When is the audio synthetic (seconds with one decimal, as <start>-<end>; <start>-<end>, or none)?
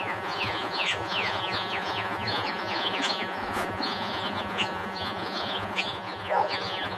0.0-7.0